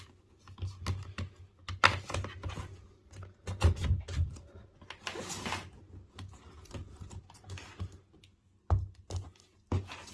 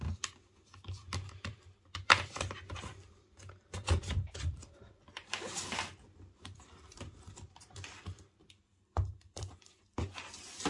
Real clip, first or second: first